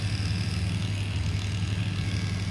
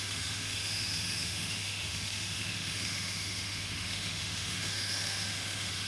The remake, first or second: second